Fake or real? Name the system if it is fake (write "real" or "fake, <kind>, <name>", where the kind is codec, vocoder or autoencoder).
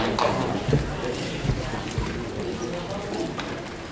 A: real